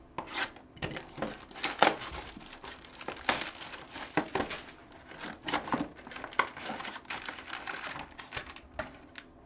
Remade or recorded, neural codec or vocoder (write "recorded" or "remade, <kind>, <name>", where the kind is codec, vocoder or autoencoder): recorded